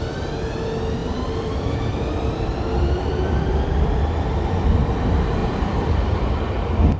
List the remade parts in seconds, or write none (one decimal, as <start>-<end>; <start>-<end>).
1.0-4.9; 5.4-6.4